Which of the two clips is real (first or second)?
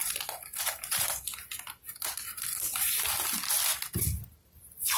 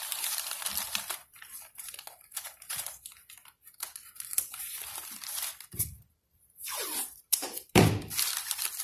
first